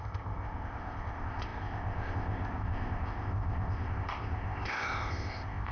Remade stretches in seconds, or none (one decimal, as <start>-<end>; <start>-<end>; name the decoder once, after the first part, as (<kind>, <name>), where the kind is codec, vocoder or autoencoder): 0.0-5.7 (codec, ZipCodec)